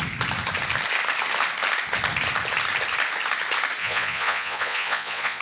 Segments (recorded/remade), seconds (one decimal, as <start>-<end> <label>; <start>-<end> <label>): 0.0-3.8 recorded; 3.8-5.4 remade

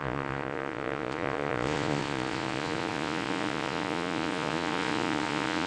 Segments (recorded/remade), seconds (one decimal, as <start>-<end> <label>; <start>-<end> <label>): 0.0-5.7 remade